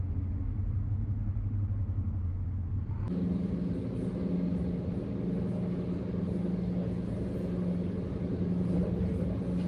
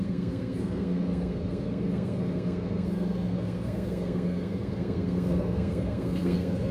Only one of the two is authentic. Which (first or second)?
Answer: first